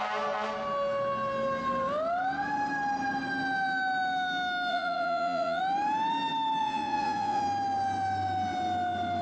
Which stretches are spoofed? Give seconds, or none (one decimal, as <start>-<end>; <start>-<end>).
4.7-5.6; 6.6-7.4